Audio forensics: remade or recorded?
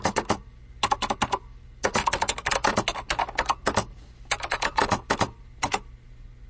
recorded